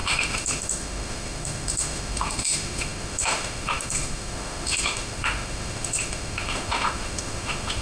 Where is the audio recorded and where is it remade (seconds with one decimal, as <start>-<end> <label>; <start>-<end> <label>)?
0.0-7.8 remade